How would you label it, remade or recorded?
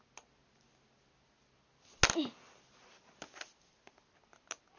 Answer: recorded